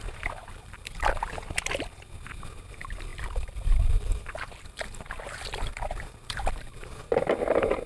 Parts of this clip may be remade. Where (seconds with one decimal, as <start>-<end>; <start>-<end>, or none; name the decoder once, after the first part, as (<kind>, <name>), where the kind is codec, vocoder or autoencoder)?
0.4-1.3 (vocoder, BigVGAN v2); 3.1-6.9